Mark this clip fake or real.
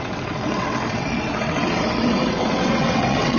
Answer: fake